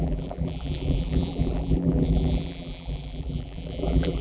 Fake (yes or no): yes